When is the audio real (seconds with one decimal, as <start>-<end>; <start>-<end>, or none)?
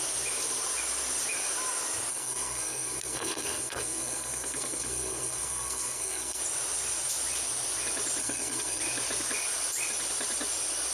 0.0-2.1; 6.4-8.2; 8.8-10.9